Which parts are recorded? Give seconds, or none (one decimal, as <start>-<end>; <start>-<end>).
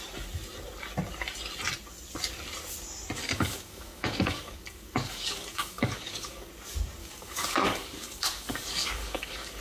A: 0.0-3.2; 6.5-7.0